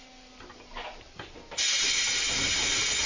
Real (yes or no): yes